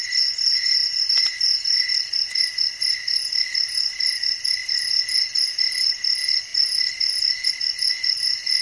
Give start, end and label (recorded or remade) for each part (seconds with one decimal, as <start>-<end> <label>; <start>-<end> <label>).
0.0-8.6 recorded